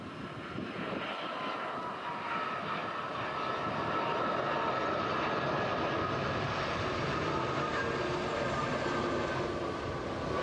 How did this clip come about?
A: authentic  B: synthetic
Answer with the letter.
A